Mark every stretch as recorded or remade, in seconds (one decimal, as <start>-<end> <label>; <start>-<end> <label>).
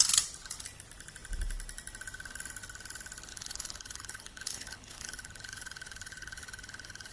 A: 0.0-3.3 recorded; 3.3-7.1 remade